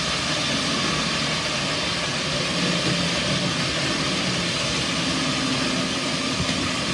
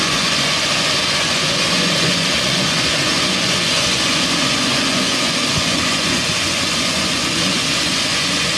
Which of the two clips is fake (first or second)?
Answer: second